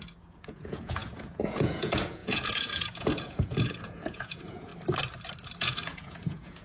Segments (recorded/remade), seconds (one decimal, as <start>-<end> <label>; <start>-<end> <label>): 0.0-4.7 remade; 4.7-5.6 recorded; 5.6-6.6 remade